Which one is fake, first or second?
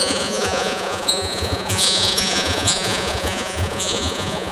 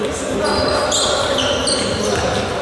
first